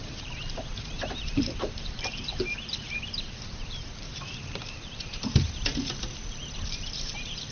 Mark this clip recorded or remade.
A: remade